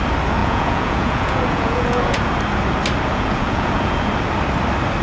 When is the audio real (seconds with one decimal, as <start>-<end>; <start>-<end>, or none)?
0.0-0.4; 2.3-3.1; 4.1-5.0